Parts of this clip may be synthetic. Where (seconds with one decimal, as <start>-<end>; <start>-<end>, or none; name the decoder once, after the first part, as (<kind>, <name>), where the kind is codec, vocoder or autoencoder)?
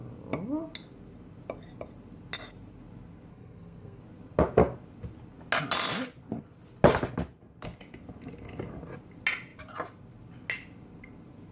3.3-4.0 (codec, SNAC)